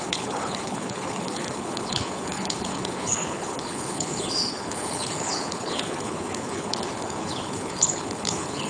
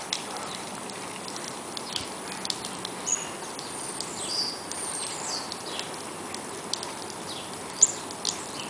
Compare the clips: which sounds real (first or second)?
second